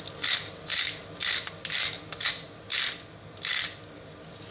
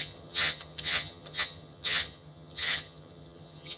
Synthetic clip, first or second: second